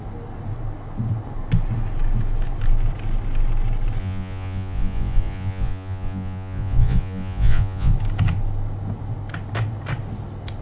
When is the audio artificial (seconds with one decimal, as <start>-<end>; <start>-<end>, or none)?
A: 4.0-7.9